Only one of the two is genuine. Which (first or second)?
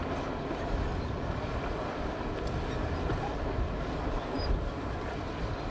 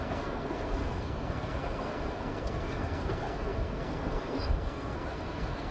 first